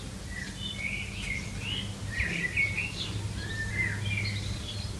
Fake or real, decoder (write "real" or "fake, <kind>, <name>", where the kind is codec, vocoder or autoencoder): real